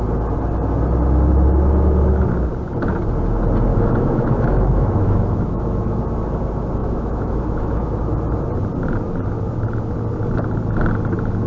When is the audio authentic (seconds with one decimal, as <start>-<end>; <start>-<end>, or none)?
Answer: 0.0-3.7; 6.0-6.8; 8.0-11.5